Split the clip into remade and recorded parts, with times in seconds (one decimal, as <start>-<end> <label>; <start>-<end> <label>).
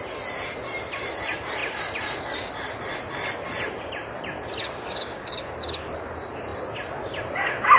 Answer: 0.0-4.6 recorded; 4.6-5.4 remade; 5.4-7.8 recorded